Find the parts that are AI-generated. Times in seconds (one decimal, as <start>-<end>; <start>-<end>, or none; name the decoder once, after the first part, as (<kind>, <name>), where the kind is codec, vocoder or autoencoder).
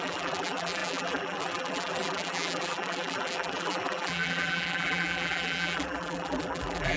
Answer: 0.0-7.0 (vocoder, BigVGAN v2)